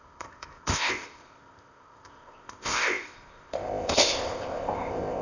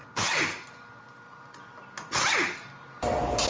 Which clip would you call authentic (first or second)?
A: second